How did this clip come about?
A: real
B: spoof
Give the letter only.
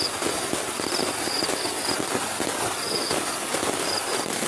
A